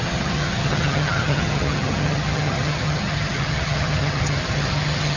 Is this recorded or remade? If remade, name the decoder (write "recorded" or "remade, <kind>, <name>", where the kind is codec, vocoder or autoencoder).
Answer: remade, vocoder, HiFi-GAN